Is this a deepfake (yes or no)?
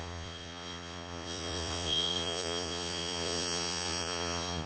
yes